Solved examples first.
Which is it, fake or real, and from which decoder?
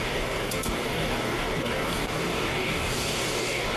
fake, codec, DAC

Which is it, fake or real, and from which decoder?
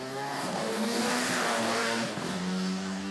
fake, codec, DAC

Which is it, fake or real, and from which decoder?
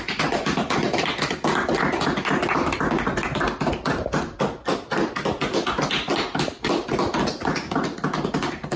real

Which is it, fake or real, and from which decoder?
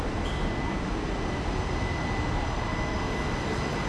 real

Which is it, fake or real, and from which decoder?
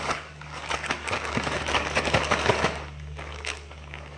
fake, codec, DAC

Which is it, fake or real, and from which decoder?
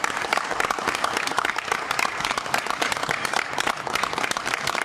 fake, codec, DAC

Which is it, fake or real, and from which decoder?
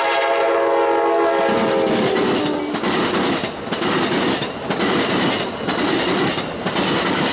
real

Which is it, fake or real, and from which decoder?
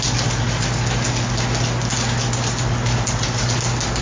real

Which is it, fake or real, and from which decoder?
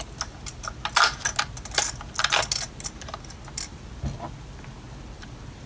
real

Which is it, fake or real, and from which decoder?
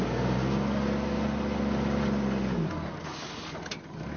real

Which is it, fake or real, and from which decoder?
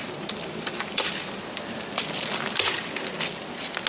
real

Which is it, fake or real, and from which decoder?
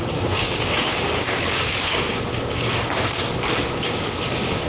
fake, codec, DAC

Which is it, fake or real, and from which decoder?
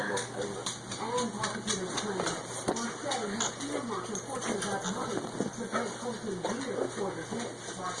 real